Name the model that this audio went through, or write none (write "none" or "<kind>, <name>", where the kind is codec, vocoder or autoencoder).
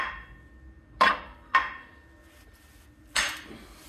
none